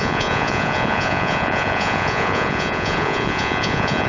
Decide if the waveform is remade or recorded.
remade